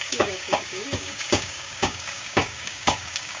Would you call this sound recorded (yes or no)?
no